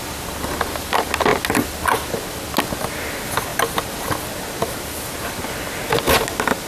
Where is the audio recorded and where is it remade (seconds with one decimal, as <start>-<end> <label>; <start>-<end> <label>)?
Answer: 0.0-6.7 recorded